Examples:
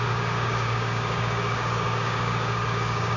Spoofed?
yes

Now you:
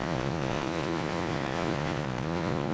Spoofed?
yes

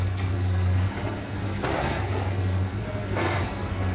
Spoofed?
yes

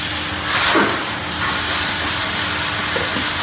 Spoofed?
no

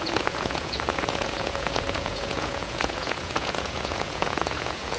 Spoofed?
yes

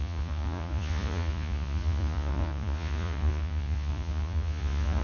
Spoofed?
yes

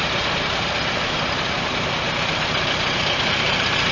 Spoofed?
yes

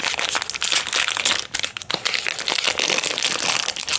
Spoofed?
no